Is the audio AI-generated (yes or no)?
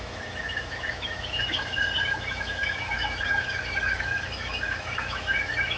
yes